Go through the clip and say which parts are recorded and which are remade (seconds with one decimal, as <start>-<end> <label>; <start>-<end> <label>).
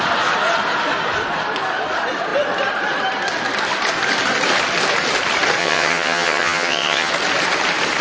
0.0-5.6 recorded; 5.6-7.1 remade; 7.1-8.0 recorded